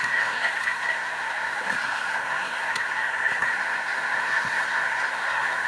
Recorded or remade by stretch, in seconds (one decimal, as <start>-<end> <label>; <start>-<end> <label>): 0.0-5.7 remade